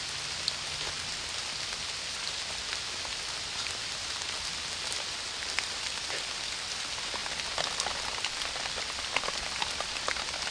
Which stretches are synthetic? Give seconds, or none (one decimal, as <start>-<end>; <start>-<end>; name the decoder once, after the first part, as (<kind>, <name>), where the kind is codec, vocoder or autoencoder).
none